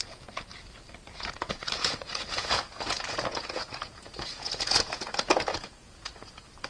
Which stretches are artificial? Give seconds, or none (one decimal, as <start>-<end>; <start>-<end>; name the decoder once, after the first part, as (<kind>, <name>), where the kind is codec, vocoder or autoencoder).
0.0-0.5 (vocoder, Vocos); 1.1-6.7